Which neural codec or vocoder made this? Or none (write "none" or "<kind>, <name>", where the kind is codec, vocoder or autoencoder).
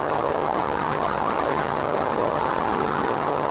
vocoder, HiFi-GAN